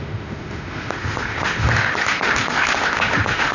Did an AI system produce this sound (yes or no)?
yes